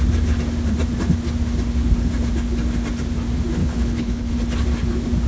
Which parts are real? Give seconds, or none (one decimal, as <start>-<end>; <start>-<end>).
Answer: 0.0-3.6; 4.3-5.3